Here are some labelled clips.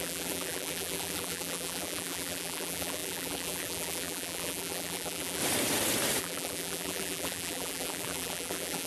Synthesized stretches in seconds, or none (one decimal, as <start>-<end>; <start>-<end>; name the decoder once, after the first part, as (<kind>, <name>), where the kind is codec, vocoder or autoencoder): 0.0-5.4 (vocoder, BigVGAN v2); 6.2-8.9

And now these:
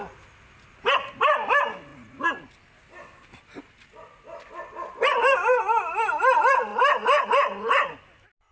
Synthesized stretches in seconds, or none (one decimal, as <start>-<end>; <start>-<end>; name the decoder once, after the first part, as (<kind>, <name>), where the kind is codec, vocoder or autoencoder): none

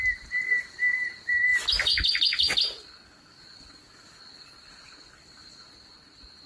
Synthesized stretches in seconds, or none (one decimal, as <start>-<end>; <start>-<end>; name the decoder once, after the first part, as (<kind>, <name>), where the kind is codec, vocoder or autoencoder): none